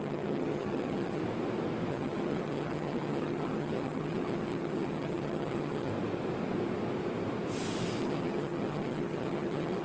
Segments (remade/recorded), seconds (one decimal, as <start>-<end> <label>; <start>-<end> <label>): 0.0-1.2 remade; 1.2-1.9 recorded; 1.9-5.9 remade; 5.9-8.0 recorded; 8.0-9.8 remade